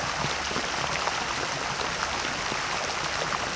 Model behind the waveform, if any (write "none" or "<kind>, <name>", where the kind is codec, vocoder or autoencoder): none